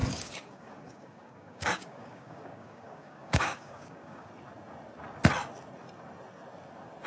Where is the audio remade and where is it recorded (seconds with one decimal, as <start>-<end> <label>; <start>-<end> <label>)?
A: 0.0-4.3 remade; 4.3-7.1 recorded

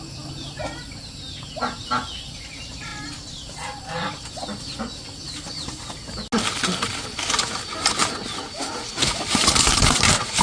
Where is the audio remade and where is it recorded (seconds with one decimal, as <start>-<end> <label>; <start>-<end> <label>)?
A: 0.0-10.4 recorded

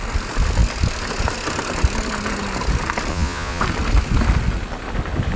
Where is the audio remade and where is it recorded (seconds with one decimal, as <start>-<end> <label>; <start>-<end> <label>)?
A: 0.0-3.1 recorded; 3.1-3.6 remade; 3.6-5.4 recorded

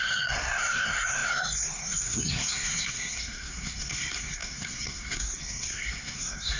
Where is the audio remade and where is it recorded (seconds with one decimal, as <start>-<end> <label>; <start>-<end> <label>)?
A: 0.0-6.6 remade

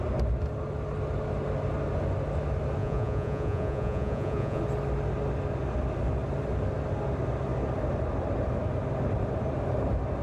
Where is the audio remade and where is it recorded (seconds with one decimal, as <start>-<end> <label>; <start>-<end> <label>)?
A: 0.0-2.8 recorded; 2.8-4.6 remade; 4.6-10.2 recorded

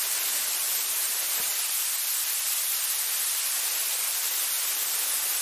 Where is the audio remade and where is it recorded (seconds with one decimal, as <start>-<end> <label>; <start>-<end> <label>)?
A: 0.0-1.1 remade; 1.1-1.5 recorded; 1.5-4.7 remade; 4.7-5.4 recorded

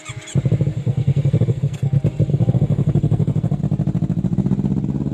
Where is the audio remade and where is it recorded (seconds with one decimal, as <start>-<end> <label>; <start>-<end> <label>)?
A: 0.0-0.7 recorded; 0.7-1.9 remade; 1.9-2.3 recorded; 2.3-3.6 remade; 3.6-5.1 recorded